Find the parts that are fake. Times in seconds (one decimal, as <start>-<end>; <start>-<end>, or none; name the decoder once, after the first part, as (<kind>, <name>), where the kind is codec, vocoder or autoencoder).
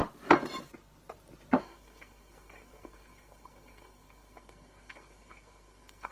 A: 1.6-6.1 (codec, SNAC)